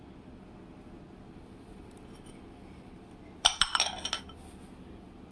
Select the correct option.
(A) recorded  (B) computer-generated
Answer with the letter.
A